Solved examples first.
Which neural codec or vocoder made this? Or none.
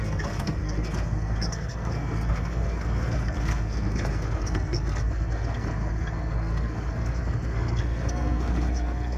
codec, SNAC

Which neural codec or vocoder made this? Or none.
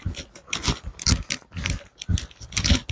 none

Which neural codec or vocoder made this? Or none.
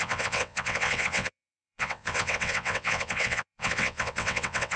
vocoder, WaveNeXt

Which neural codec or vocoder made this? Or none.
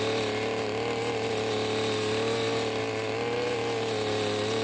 none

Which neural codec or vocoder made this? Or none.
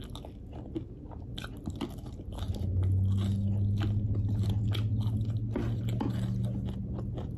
none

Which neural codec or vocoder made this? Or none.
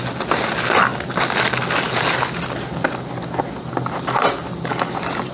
none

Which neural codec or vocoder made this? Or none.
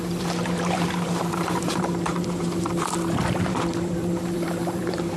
vocoder, BigVGAN v2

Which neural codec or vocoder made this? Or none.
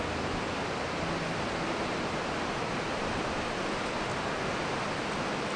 none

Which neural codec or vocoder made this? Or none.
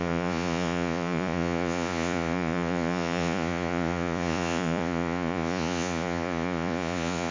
vocoder, Vocos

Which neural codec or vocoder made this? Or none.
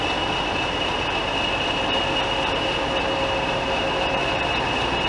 none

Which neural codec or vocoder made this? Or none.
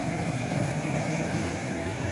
codec, SNAC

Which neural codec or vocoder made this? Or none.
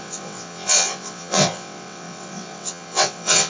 vocoder, WaveNeXt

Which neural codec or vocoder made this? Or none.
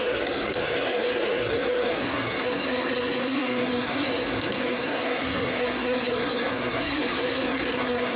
codec, SNAC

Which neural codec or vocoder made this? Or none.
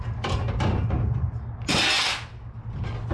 none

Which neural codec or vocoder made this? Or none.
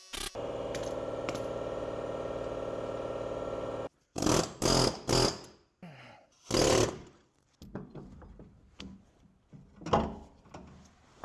none